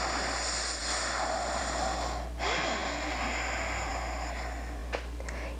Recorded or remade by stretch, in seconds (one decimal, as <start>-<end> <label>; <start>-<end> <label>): 0.0-5.6 recorded